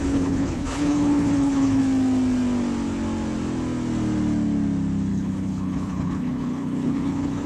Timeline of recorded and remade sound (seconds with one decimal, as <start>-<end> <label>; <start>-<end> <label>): 0.0-1.8 remade; 1.8-5.1 recorded; 5.1-7.5 remade

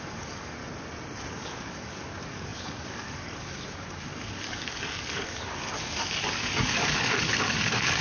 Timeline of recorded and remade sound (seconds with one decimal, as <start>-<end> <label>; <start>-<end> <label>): 0.0-0.6 remade; 0.6-1.3 recorded; 1.3-8.0 remade

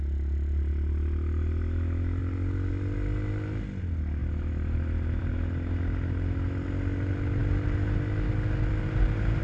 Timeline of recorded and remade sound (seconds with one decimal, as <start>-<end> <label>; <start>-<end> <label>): 0.0-9.4 recorded